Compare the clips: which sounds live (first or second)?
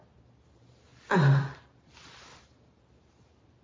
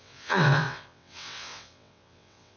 first